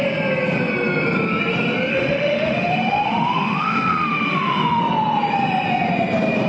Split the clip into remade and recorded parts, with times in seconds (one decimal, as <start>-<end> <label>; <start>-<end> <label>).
0.0-1.9 recorded; 1.9-4.8 remade; 4.8-6.5 recorded